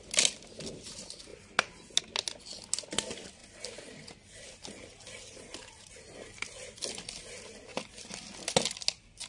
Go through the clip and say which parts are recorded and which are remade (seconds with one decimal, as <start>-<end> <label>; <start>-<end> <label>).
0.0-9.3 recorded